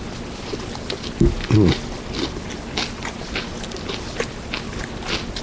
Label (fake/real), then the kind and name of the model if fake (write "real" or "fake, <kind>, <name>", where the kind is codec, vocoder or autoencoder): real